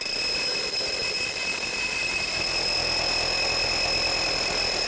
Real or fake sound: real